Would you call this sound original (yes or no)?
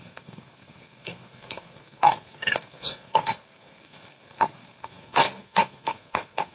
no